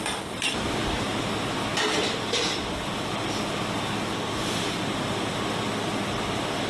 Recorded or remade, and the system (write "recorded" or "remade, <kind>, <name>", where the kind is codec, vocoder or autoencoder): recorded